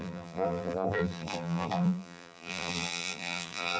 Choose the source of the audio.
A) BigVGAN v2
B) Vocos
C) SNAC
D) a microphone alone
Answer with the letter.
A